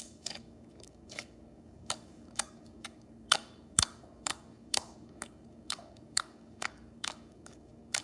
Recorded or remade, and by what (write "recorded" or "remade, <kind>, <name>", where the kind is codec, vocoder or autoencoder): remade, codec, DAC